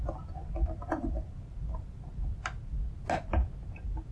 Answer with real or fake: real